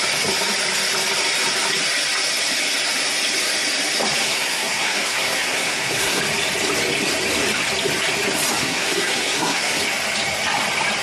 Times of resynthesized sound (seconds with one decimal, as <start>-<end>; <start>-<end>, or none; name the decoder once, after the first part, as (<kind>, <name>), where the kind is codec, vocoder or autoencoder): 4.2-6.2 (codec, SNAC); 8.6-9.8